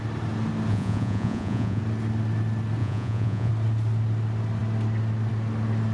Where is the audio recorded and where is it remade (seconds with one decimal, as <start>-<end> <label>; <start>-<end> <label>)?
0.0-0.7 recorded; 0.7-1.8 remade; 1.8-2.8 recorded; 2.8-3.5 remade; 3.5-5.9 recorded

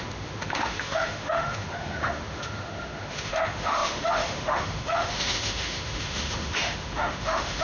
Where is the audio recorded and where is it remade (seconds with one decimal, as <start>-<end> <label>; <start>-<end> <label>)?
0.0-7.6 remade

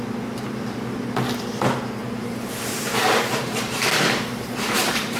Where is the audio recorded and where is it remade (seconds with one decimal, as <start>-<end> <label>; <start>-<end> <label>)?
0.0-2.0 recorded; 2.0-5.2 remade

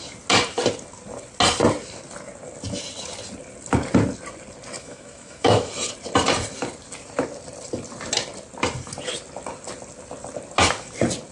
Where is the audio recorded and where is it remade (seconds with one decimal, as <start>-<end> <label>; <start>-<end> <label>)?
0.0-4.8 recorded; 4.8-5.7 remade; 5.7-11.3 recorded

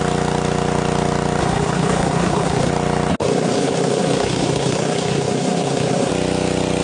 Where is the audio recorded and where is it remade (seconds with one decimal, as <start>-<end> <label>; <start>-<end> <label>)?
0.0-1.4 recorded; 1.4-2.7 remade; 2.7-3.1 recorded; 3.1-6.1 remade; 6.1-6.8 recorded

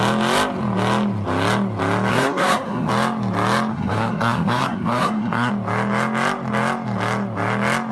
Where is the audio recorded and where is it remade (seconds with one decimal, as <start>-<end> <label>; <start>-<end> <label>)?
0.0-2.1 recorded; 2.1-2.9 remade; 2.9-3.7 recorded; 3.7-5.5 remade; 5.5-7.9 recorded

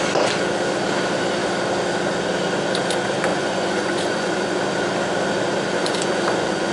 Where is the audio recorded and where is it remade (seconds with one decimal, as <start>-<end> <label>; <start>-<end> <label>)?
0.0-3.3 recorded; 3.3-4.6 remade; 4.6-5.8 recorded; 5.8-6.7 remade